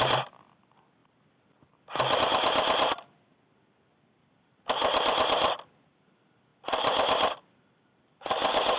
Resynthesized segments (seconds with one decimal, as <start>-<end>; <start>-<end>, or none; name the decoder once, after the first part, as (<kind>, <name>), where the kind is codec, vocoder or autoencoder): none